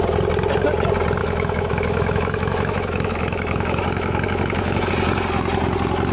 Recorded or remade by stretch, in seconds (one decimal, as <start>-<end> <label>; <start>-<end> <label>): 0.0-1.2 recorded; 1.2-4.9 remade; 4.9-6.1 recorded